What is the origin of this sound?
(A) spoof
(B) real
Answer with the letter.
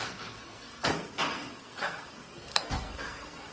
A